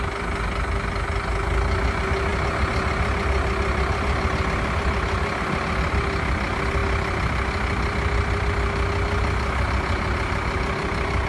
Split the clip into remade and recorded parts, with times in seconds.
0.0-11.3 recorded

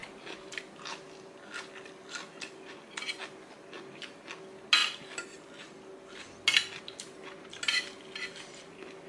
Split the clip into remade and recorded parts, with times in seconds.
0.0-9.1 recorded

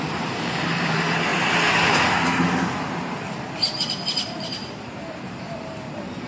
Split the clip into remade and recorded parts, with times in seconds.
0.0-1.3 remade; 1.3-5.1 recorded; 5.1-6.3 remade

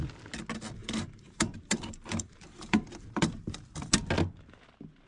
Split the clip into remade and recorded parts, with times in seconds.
0.0-0.8 recorded; 0.8-3.9 remade; 3.9-5.1 recorded

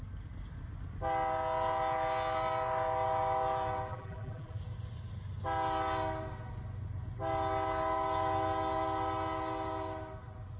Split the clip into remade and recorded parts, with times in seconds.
0.0-3.9 recorded; 3.9-4.6 remade; 4.6-10.6 recorded

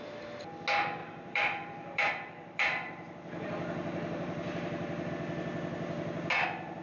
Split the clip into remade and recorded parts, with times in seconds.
0.0-1.0 recorded; 1.0-5.1 remade; 5.1-6.8 recorded